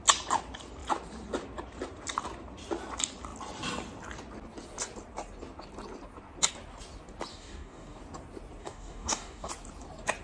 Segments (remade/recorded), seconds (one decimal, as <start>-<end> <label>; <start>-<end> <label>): 0.0-7.3 recorded; 7.3-8.0 remade; 8.0-8.6 recorded; 8.6-9.5 remade; 9.5-10.2 recorded